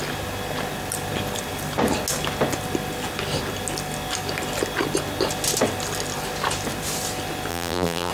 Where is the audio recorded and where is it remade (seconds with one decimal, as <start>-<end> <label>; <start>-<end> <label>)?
0.0-7.5 recorded; 7.5-8.1 remade